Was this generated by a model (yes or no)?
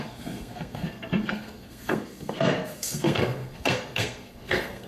yes